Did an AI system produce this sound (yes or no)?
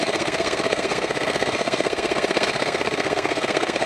yes